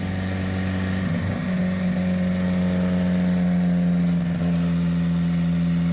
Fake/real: real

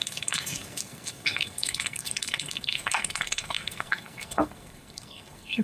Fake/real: fake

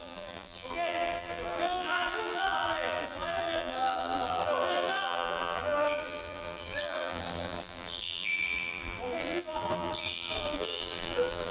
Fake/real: fake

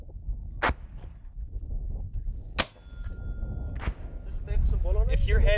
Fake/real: real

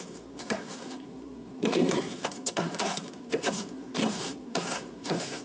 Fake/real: fake